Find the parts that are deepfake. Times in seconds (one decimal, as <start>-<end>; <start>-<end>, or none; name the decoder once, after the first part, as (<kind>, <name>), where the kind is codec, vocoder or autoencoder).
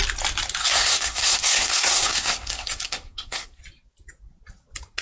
0.6-3.6 (codec, SNAC)